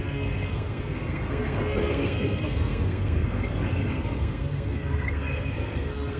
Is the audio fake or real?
fake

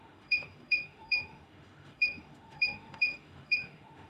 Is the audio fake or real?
fake